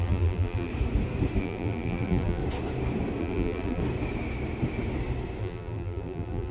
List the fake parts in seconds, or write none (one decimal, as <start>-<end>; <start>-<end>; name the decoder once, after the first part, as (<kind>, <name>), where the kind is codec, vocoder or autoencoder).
0.0-0.7 (vocoder, BigVGAN v2); 1.4-2.4; 3.2-3.8; 5.4-6.5